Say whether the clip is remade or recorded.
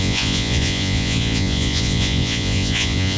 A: remade